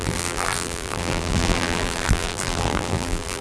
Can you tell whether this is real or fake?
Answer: fake